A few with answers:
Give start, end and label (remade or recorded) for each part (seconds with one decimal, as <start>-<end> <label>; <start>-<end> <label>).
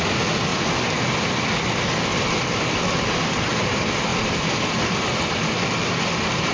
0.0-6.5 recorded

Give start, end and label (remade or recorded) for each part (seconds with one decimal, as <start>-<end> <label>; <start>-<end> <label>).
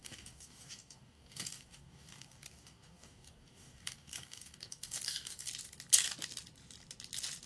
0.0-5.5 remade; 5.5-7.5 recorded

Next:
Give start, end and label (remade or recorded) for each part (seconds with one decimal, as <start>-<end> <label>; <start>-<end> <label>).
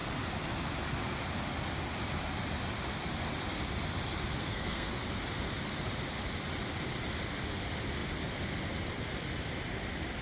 0.0-4.4 recorded; 4.4-4.9 remade; 4.9-10.2 recorded